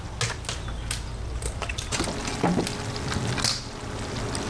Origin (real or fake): real